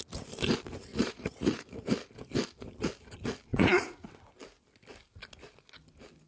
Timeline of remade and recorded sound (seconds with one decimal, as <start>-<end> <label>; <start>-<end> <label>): 0.0-0.9 recorded; 0.9-1.9 remade; 1.9-3.5 recorded; 3.5-4.1 remade; 4.1-6.3 recorded